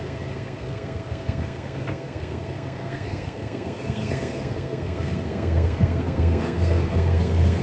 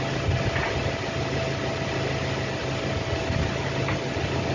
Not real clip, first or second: first